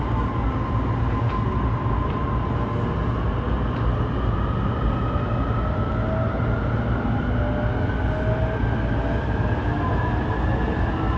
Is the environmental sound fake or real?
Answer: real